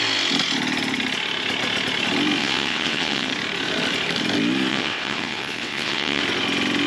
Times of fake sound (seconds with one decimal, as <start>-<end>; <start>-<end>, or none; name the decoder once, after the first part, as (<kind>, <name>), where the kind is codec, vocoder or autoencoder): 2.4-3.3 (vocoder, WaveNeXt); 4.7-6.2